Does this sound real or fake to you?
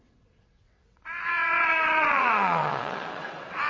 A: fake